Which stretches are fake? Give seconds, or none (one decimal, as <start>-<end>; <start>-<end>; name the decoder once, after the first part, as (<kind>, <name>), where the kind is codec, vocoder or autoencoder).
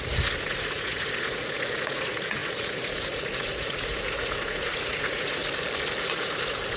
0.0-5.4 (vocoder, Vocos); 6.0-6.8